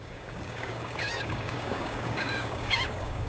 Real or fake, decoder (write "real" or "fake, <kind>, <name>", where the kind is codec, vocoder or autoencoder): fake, codec, DAC